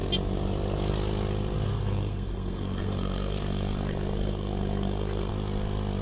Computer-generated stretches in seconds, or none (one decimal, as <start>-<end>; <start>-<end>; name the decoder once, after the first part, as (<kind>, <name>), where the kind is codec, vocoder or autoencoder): 1.7-5.3 (codec, SNAC)